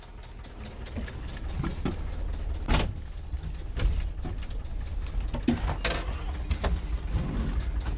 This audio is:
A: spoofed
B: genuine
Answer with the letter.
B